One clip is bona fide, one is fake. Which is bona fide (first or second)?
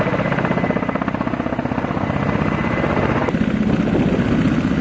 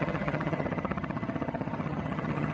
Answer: first